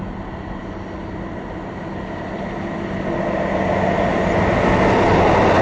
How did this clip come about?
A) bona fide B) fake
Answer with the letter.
A